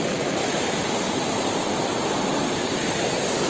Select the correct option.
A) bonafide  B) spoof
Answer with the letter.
A